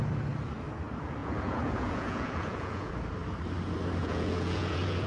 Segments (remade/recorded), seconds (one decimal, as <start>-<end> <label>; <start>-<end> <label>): 0.0-1.2 recorded; 1.2-2.9 remade; 2.9-4.0 recorded; 4.0-5.1 remade